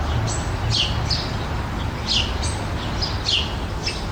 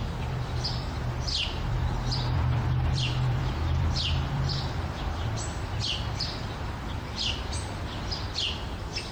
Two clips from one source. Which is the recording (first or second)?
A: first